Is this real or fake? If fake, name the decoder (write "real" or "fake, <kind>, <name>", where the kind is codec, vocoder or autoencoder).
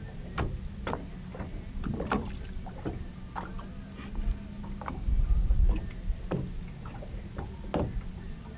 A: real